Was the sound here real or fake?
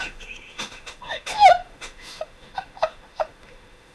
fake